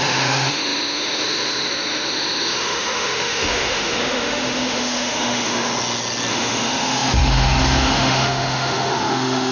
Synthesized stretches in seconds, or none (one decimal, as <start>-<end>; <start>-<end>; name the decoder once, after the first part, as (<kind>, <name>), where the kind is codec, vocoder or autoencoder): 0.0-5.7 (autoencoder, DAC-VAE); 6.3-9.5